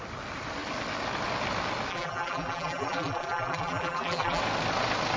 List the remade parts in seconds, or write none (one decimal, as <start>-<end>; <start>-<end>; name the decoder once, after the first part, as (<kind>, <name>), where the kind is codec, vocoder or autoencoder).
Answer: 1.9-4.4 (vocoder, BigVGAN v2)